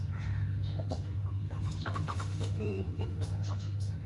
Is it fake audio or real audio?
fake